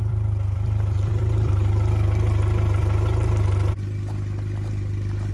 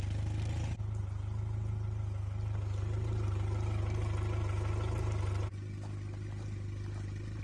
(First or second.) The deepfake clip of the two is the first